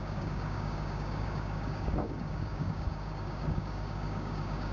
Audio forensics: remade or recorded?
remade